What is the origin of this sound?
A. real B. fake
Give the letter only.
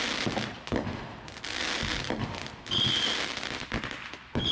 A